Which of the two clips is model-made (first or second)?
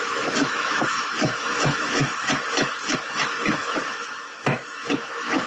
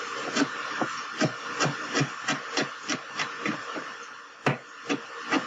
first